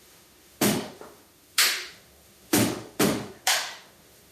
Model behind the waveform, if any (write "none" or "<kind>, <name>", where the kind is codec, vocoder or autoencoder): autoencoder, DAC-VAE